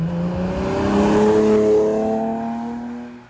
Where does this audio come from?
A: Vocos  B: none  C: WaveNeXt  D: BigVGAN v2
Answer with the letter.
B